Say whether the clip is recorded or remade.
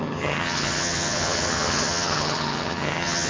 remade